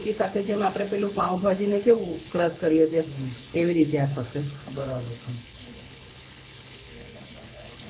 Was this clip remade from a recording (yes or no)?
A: yes